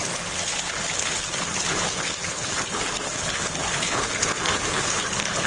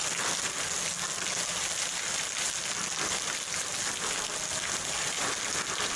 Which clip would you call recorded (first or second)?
second